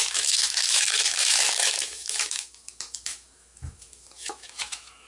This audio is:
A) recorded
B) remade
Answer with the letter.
B